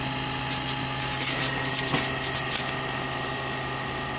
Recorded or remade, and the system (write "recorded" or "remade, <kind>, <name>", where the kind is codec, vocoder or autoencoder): recorded